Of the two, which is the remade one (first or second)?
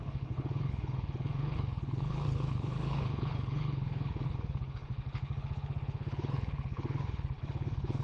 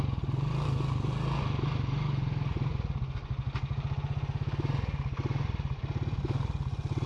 first